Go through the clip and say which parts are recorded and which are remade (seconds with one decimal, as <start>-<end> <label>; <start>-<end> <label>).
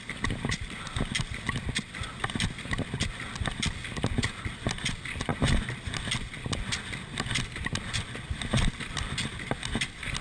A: 0.0-10.2 recorded